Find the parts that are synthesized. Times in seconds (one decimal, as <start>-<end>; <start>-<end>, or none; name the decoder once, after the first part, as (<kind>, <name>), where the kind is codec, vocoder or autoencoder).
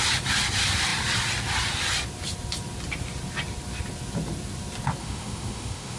5.0-6.0 (autoencoder, DAC-VAE)